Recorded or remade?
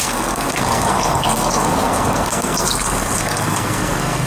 remade